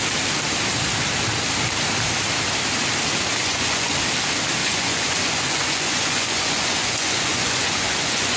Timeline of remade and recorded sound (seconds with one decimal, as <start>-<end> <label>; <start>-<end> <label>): 0.0-3.4 recorded; 3.4-3.9 remade; 3.9-4.6 recorded; 4.6-8.4 remade